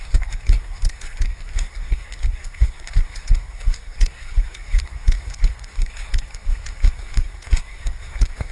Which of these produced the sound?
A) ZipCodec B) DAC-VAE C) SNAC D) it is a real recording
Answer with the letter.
C